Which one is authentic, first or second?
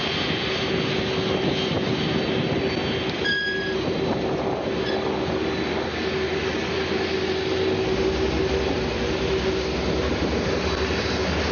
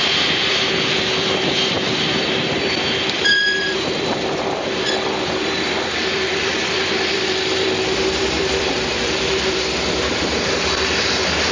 first